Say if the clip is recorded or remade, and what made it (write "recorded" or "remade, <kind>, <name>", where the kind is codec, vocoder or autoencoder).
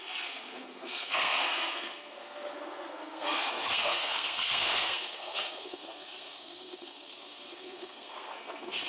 remade, codec, SNAC